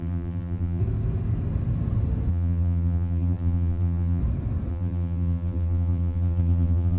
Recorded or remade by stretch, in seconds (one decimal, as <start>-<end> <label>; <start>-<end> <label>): 0.0-0.8 remade; 0.8-2.3 recorded; 2.3-4.2 remade; 4.2-4.7 recorded; 4.7-7.0 remade